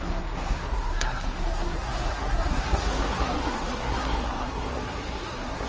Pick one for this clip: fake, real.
fake